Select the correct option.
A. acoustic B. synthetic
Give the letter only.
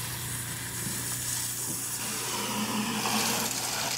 A